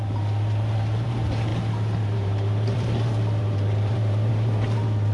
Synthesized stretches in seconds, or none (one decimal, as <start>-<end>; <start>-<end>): 0.0-5.1